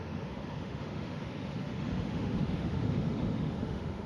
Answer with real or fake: fake